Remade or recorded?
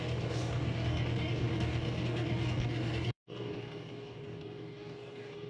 remade